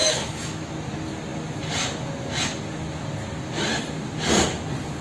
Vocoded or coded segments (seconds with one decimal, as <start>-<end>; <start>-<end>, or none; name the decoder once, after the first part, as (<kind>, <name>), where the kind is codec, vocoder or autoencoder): 0.0-0.7 (autoencoder, DAC-VAE)